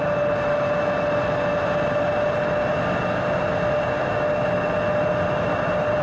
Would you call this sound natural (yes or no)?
yes